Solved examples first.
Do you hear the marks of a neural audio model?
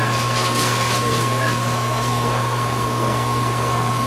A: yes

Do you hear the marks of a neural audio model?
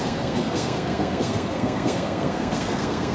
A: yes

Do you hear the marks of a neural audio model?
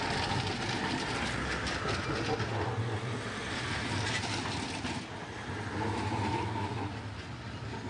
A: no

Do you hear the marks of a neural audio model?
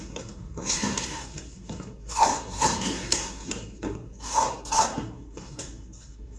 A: yes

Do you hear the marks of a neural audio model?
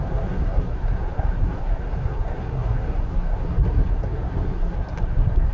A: yes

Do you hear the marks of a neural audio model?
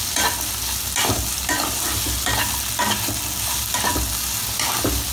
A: no